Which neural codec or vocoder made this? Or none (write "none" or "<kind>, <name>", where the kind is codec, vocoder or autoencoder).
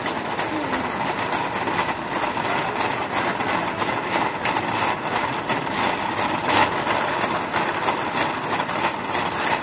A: none